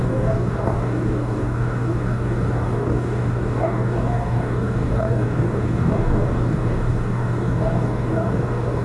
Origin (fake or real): fake